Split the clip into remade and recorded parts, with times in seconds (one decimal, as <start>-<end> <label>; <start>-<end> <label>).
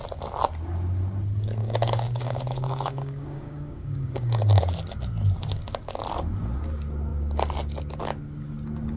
0.0-1.6 recorded; 1.6-4.6 remade; 4.6-9.0 recorded